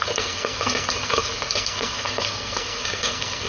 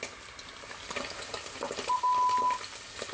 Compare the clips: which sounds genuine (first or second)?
second